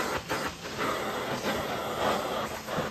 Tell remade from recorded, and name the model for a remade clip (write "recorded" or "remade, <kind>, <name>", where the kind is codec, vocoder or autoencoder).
recorded